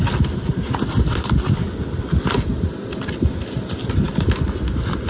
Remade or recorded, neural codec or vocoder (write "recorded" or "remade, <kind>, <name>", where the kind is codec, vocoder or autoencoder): recorded